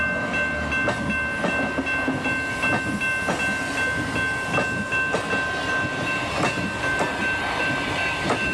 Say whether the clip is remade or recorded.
recorded